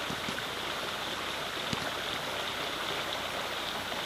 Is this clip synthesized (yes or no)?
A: no